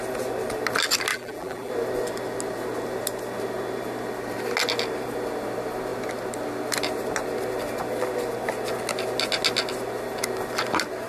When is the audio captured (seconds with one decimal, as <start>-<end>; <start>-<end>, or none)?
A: 0.0-1.1; 1.7-11.1